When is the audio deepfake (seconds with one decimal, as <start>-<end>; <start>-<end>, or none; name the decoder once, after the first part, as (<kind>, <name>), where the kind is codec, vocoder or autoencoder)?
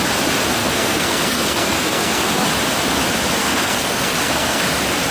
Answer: 0.6-2.3 (codec, SNAC); 3.4-4.6